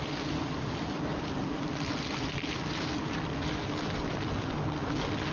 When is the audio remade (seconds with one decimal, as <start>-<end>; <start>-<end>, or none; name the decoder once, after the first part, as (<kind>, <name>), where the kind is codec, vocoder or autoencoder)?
none